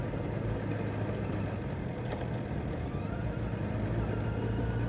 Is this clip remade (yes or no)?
no